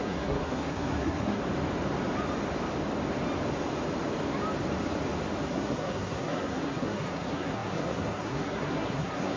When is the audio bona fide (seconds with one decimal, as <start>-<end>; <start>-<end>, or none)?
1.4-5.5